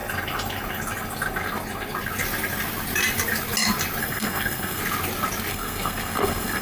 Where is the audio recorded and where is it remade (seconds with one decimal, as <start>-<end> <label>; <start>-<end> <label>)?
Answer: 0.0-4.0 recorded; 4.0-4.8 remade; 4.8-5.5 recorded; 5.5-6.6 remade